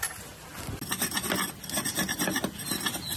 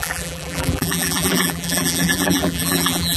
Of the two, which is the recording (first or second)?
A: first